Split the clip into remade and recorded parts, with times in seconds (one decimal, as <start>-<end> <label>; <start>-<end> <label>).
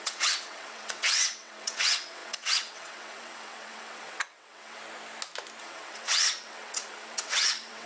0.0-4.8 remade; 4.8-5.6 recorded; 5.6-7.9 remade